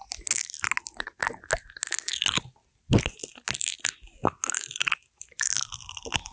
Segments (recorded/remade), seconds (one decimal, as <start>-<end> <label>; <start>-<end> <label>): 0.0-6.3 recorded